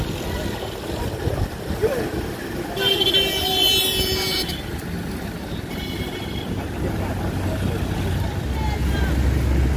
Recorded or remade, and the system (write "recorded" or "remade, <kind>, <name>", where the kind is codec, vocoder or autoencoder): recorded